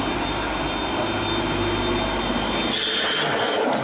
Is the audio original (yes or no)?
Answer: yes